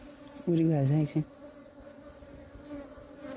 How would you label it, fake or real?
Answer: real